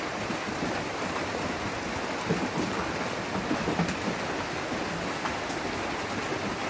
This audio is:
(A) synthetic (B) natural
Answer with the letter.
B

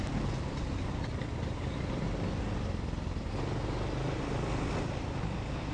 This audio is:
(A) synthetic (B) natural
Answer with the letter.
B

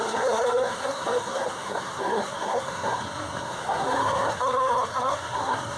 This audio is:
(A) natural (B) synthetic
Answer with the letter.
B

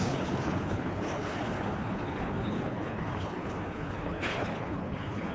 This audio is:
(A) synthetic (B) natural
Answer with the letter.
A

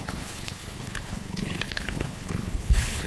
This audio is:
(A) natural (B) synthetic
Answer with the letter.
B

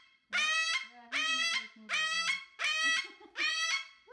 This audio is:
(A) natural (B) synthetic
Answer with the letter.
A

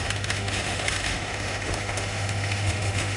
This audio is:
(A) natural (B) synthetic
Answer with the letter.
B